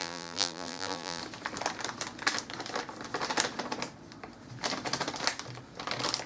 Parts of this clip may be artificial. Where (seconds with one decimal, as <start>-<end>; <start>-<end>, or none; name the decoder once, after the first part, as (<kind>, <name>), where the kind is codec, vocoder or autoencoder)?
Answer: 0.0-1.2 (vocoder, BigVGAN v2)